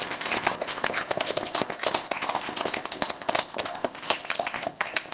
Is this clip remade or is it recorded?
remade